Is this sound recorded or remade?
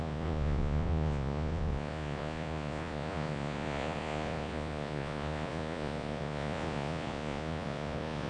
remade